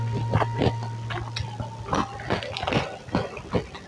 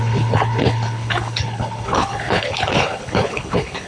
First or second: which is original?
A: first